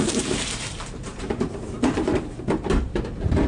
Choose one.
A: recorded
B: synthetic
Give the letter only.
B